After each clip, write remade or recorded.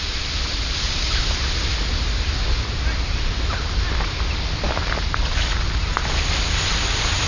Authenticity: recorded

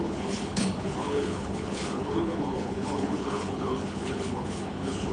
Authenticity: remade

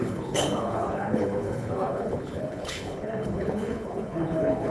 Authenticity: remade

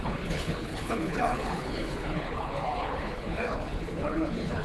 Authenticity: remade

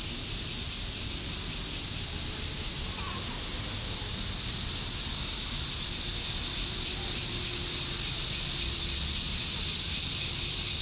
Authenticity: recorded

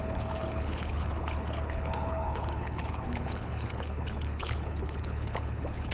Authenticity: remade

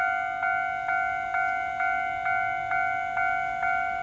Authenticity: recorded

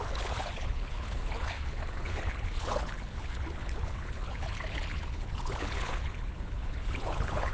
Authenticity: remade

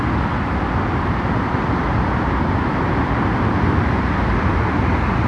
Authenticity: recorded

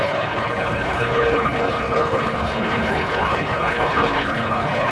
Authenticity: remade